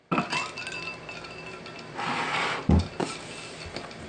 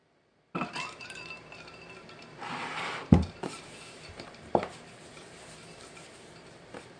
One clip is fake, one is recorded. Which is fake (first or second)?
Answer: second